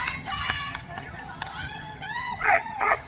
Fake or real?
fake